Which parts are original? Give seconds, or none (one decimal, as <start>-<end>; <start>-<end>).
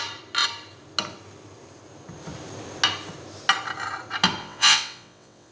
0.0-4.4